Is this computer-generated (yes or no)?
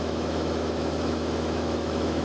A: yes